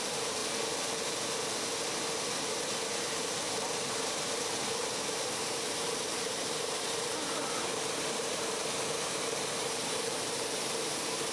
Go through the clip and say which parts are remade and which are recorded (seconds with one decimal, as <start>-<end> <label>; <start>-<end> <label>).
0.0-0.4 remade; 0.4-2.8 recorded; 2.8-11.3 remade